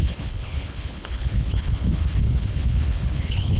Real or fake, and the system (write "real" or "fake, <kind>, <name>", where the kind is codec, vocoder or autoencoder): fake, codec, HILCodec